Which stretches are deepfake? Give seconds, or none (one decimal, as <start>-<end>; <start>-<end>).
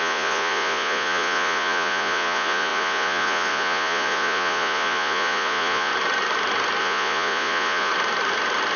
0.0-5.9; 6.8-7.9